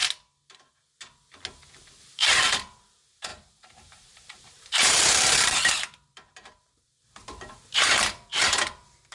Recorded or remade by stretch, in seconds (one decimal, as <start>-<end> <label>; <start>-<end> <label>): 0.0-2.0 recorded; 2.0-9.1 remade